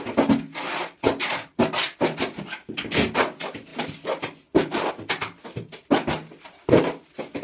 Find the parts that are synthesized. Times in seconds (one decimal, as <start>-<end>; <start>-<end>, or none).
3.7-4.9